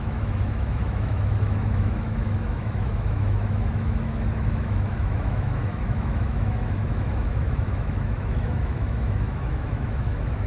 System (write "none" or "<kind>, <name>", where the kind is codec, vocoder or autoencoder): autoencoder, DAC-VAE